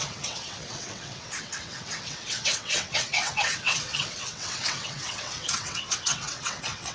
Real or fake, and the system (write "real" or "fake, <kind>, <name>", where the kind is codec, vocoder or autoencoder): fake, vocoder, WaveNeXt